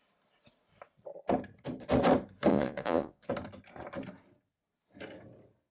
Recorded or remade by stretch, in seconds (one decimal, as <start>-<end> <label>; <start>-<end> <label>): 0.0-2.5 recorded; 2.5-3.3 remade; 3.3-5.7 recorded